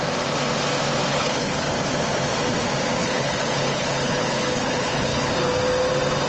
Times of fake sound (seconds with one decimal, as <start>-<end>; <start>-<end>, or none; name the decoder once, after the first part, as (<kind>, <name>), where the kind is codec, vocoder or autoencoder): 1.1-1.7 (codec, HILCodec); 3.0-5.3